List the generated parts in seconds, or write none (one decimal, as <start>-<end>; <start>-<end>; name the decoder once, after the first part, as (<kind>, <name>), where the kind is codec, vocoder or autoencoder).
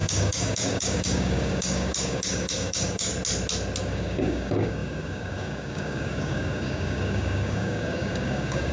0.0-3.1 (codec, DAC); 3.8-8.7